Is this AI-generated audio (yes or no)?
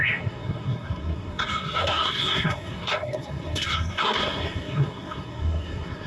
yes